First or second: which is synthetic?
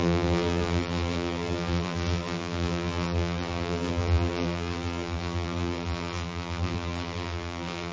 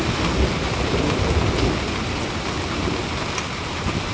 first